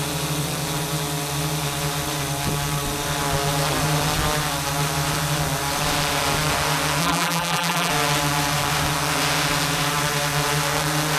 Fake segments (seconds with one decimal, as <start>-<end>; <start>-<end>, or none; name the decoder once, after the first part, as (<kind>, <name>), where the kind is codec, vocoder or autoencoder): 7.0-7.9 (vocoder, BigVGAN v2)